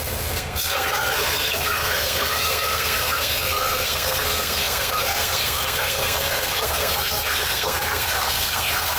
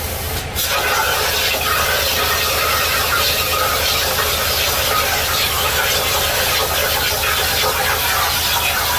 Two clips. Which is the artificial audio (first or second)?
first